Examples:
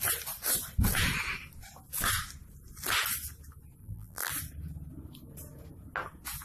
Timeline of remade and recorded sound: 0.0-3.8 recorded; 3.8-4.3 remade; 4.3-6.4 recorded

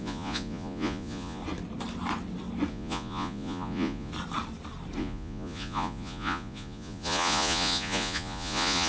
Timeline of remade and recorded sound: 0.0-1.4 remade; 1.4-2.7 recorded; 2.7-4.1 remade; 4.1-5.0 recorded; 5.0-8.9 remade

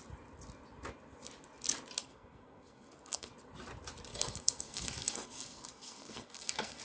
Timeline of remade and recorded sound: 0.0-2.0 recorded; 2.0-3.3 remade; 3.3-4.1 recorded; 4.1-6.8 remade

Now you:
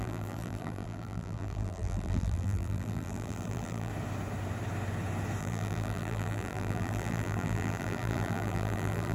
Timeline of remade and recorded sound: 0.0-3.9 remade; 3.9-5.4 recorded; 5.4-9.1 remade

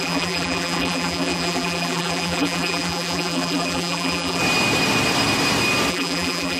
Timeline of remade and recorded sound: 0.0-4.4 remade; 4.4-5.9 recorded; 5.9-6.6 remade

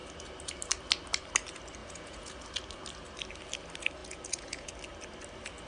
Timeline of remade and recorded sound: 0.0-1.8 recorded; 1.8-2.3 remade; 2.3-4.0 recorded; 4.0-4.7 remade; 4.7-5.7 recorded

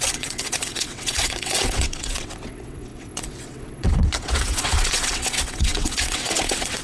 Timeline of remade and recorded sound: 0.0-6.8 remade